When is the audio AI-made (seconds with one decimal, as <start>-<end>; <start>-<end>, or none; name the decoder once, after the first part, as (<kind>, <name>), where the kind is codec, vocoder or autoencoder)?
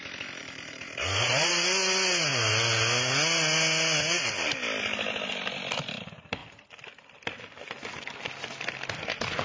0.4-1.5 (vocoder, BigVGAN v2)